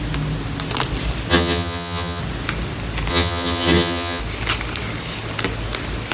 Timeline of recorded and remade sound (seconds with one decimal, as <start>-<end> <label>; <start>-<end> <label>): 0.0-1.3 recorded; 1.3-2.2 remade; 2.2-3.1 recorded; 3.1-4.2 remade; 4.2-6.1 recorded